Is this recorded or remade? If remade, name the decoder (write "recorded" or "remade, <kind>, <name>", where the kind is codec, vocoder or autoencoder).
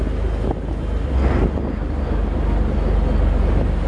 recorded